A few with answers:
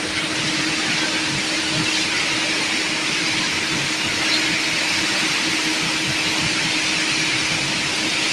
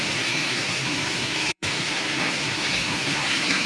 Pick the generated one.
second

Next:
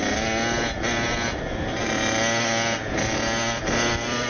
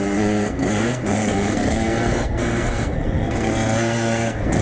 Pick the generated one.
second